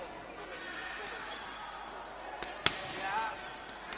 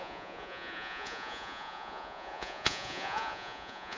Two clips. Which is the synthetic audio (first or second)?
second